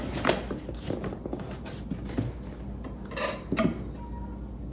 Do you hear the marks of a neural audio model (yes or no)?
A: no